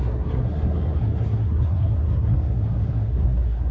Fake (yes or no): yes